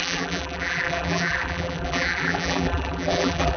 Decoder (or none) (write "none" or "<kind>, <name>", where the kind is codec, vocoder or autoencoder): vocoder, BigVGAN v2